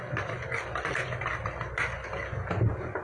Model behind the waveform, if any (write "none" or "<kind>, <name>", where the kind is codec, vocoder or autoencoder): none